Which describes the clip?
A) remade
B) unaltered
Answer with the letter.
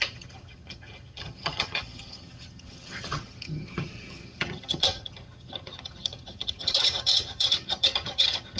A